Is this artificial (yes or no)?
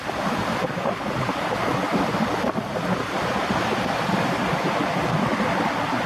no